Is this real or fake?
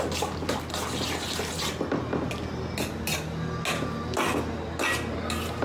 real